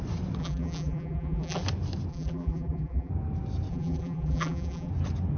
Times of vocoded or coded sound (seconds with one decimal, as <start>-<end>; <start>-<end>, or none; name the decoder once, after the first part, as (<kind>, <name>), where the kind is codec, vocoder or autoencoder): 0.4-1.6 (vocoder, BigVGAN v2); 2.1-3.1; 3.7-4.9